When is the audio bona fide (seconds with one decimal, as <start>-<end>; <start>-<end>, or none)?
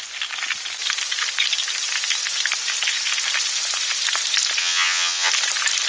0.0-4.6; 5.3-5.9